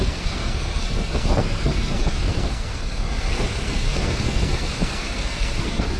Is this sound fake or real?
fake